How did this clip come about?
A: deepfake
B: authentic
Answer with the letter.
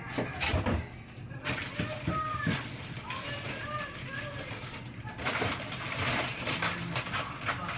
B